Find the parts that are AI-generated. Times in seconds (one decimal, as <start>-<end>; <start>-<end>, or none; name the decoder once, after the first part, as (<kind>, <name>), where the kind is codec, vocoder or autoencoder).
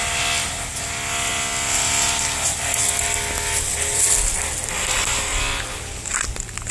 none